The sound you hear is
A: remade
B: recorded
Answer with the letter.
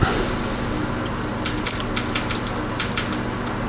B